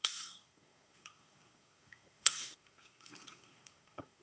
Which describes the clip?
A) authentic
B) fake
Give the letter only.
B